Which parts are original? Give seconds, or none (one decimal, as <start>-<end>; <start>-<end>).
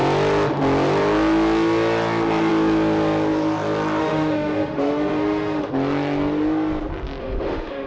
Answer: 0.0-4.0; 5.7-7.2